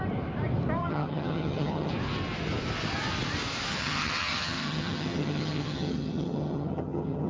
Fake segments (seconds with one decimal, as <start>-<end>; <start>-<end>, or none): 0.8-1.9; 3.7-7.3

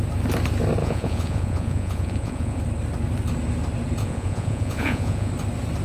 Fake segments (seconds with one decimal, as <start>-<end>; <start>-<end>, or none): 0.8-2.6; 4.0-5.3

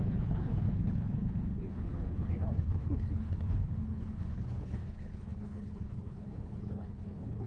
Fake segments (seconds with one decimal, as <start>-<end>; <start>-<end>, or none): 0.0-7.5